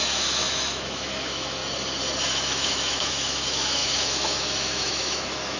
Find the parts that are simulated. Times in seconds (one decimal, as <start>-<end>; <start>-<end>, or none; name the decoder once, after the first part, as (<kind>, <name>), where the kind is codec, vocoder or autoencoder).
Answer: 0.0-1.6 (autoencoder, DAC-VAE); 2.2-5.6